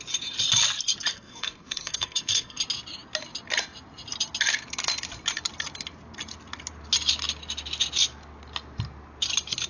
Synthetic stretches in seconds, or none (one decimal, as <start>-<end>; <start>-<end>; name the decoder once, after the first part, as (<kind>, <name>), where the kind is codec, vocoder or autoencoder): 1.1-2.6 (codec, SNAC)